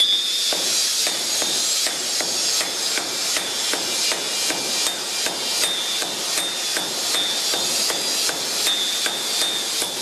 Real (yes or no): yes